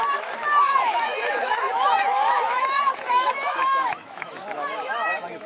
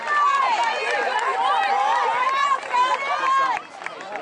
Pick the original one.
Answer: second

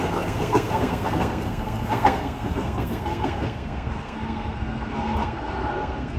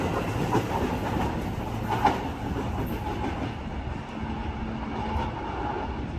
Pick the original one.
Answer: second